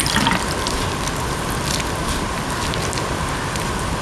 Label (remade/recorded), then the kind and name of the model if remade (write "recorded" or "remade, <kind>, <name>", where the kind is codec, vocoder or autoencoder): remade, vocoder, BigVGAN v2